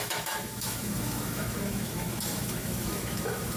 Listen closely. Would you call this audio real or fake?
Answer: fake